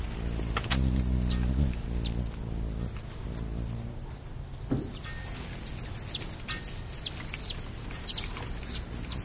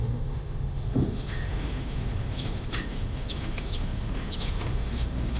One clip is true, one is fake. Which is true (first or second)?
first